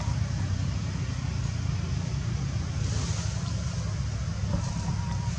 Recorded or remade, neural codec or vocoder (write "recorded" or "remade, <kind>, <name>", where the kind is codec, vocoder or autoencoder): recorded